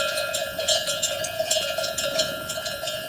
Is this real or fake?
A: fake